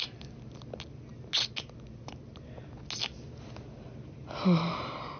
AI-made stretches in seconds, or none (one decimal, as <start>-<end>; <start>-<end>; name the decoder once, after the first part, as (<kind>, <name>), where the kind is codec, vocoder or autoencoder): none